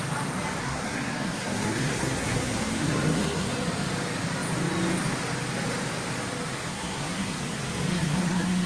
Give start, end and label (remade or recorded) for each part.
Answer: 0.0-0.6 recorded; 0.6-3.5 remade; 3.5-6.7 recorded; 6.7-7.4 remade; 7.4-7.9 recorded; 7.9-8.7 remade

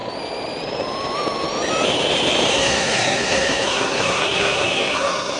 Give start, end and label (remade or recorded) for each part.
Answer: 0.0-2.5 recorded; 2.5-5.4 remade

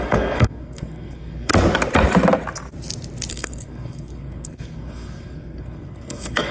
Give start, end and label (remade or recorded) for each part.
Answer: 0.0-1.5 remade; 1.5-3.3 recorded; 3.3-6.5 remade

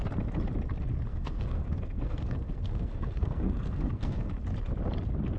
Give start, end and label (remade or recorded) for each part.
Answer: 0.0-1.1 recorded; 1.1-4.3 remade; 4.3-5.4 recorded

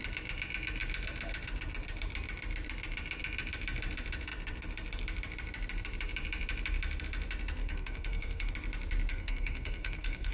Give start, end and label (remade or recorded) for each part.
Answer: 0.0-7.6 recorded; 7.6-8.5 remade; 8.5-9.1 recorded; 9.1-10.3 remade

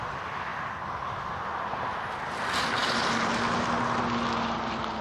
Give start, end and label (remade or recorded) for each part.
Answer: 0.0-5.0 recorded

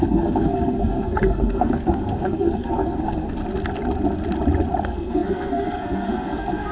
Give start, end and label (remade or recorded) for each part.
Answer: 0.0-3.4 remade; 3.4-4.8 recorded; 4.8-6.7 remade

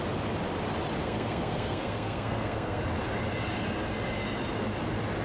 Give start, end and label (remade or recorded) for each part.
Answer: 0.0-1.0 recorded; 1.0-2.8 remade; 2.8-5.2 recorded